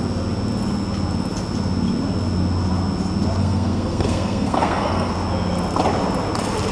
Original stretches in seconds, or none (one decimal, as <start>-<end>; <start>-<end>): 0.0-3.4; 5.1-6.7